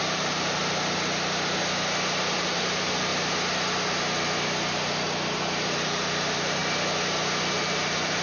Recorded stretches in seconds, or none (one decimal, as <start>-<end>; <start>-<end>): 0.6-2.2; 3.1-5.3; 6.6-7.6